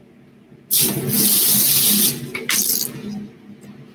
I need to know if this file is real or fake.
real